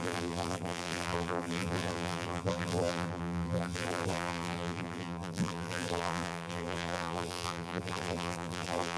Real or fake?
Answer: fake